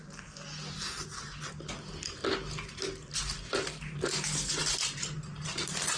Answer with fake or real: real